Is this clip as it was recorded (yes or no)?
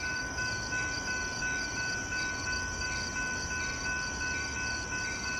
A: yes